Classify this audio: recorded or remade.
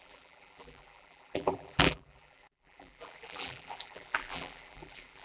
remade